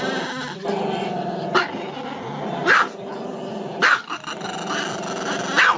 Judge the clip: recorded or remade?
recorded